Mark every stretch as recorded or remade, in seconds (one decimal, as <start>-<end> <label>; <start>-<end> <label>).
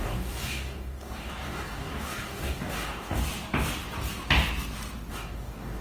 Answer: 0.0-3.2 remade; 3.2-5.1 recorded; 5.1-5.8 remade